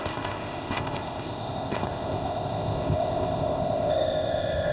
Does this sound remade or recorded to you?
remade